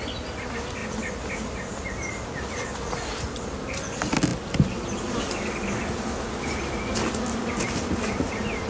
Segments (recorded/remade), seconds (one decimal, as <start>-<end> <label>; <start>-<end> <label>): 0.0-8.7 recorded